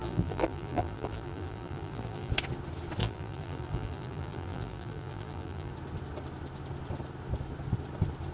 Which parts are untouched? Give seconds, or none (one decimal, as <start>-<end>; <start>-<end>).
2.3-3.0; 5.7-8.3